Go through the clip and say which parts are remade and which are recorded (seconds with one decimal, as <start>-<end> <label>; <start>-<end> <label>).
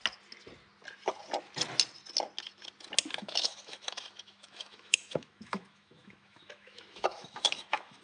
0.0-3.2 recorded; 3.2-8.0 remade